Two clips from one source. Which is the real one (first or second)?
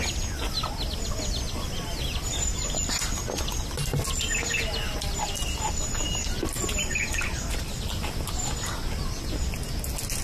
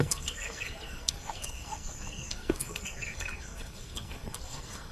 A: first